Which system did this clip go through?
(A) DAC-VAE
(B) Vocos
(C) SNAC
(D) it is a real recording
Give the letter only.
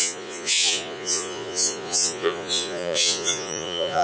B